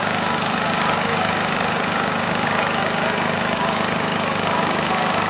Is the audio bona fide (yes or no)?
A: no